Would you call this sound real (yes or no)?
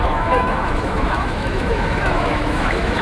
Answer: no